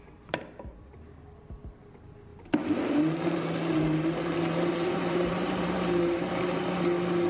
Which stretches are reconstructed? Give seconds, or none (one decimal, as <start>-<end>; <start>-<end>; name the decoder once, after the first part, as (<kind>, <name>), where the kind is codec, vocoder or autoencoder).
2.3-6.7 (vocoder, BigVGAN v2)